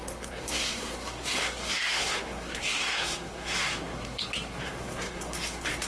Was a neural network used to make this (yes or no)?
yes